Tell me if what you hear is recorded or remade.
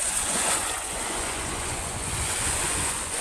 remade